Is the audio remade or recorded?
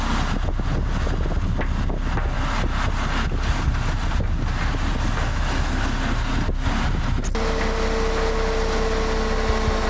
recorded